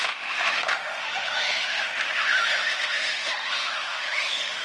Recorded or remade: remade